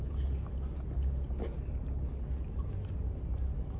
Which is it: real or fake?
real